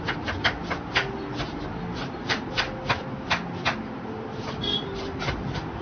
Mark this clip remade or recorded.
recorded